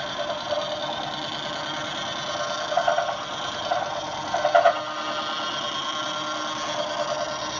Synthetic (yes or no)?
no